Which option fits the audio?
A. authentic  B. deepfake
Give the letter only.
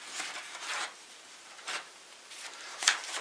B